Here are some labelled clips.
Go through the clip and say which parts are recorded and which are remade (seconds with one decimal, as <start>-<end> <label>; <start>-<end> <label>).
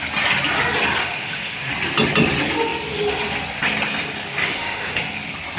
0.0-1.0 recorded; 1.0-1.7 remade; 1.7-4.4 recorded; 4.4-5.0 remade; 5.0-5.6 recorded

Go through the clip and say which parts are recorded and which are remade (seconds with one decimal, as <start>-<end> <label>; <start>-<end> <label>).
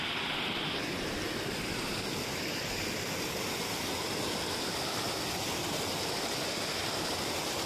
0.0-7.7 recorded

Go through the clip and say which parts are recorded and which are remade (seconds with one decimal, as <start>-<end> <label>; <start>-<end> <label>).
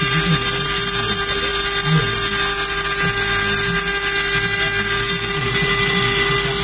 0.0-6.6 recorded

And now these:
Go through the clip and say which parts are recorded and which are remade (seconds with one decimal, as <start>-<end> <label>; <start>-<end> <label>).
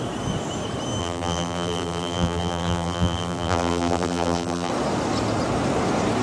0.0-1.0 recorded; 1.0-4.7 remade; 4.7-6.2 recorded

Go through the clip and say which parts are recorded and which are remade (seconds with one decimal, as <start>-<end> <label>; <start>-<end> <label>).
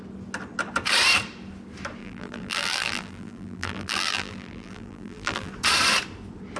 0.0-2.0 recorded; 2.0-5.5 remade; 5.5-6.6 recorded